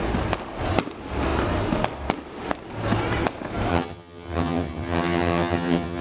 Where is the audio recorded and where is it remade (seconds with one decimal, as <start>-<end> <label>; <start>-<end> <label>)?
0.0-3.7 recorded; 3.7-6.0 remade